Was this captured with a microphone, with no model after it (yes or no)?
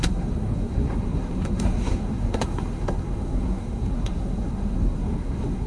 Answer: no